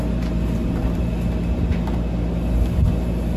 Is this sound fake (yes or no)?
no